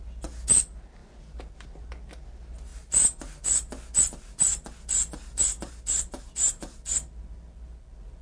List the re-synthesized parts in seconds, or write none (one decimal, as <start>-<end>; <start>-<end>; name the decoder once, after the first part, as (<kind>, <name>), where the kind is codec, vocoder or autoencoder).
none